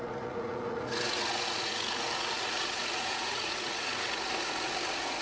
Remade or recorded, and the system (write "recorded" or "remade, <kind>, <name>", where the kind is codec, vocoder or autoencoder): remade, vocoder, Vocos